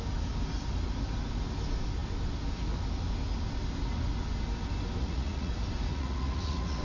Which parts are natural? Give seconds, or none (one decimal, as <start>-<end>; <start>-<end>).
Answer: 0.0-5.0; 5.5-5.9